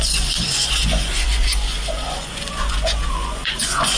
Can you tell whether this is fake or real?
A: fake